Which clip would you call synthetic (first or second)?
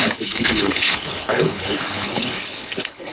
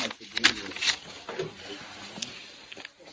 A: first